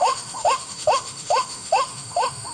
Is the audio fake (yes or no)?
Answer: yes